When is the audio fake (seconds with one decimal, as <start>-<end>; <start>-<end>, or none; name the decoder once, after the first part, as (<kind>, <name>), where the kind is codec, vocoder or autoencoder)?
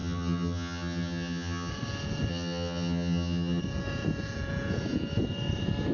0.0-1.7 (vocoder, HiFi-GAN); 2.3-3.6